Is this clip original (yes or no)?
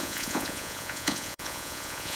no